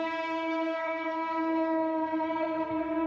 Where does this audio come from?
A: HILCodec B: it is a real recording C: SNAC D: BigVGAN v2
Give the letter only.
C